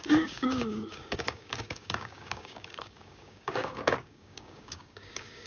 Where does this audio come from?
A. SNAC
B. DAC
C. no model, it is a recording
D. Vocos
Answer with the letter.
B